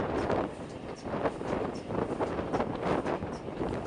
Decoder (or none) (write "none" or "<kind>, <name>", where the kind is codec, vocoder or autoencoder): vocoder, BigVGAN v2